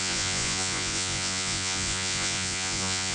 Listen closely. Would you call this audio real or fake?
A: fake